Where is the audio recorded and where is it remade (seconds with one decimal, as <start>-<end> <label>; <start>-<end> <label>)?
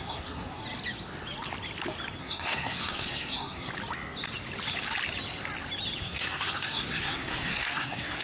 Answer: 0.0-0.6 remade; 0.6-2.2 recorded; 2.2-3.7 remade; 3.7-6.0 recorded; 6.0-8.2 remade